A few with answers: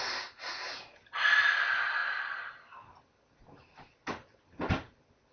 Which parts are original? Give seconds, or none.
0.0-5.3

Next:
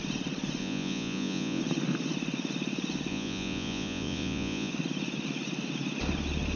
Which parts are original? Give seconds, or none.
0.0-0.6; 1.6-3.1; 4.7-6.6

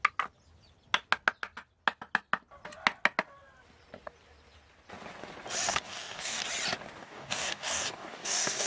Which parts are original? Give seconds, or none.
0.0-5.7; 6.4-7.0

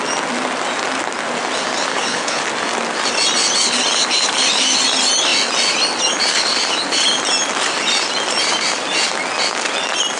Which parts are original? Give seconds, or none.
0.0-1.9; 2.4-10.2

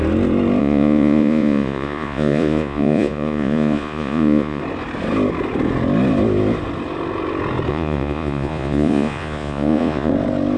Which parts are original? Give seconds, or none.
0.0-0.6; 4.6-7.7; 10.1-10.6

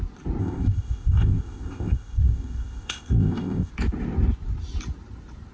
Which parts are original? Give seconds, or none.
0.0-0.4; 3.7-5.5

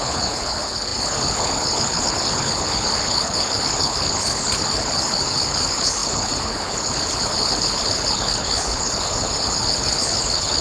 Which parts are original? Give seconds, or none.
none